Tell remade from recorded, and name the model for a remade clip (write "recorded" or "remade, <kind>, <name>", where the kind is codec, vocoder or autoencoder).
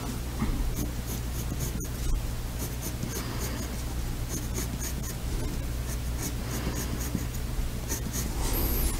recorded